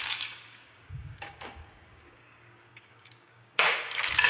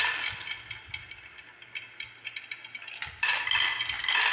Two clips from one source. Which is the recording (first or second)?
second